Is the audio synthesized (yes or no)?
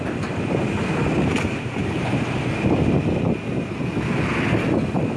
no